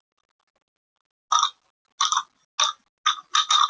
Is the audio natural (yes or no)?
yes